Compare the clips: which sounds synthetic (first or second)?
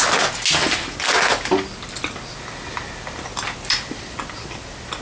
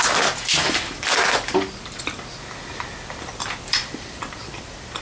second